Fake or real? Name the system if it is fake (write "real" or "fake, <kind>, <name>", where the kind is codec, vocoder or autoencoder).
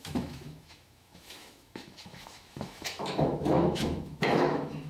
fake, autoencoder, DAC-VAE